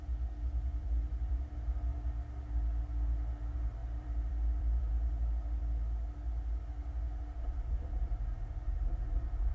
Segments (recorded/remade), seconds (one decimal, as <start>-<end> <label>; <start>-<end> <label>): 0.0-0.7 recorded; 0.7-1.5 remade; 1.5-3.8 recorded; 3.8-4.9 remade; 4.9-9.5 recorded